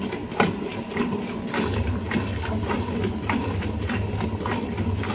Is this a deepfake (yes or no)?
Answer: no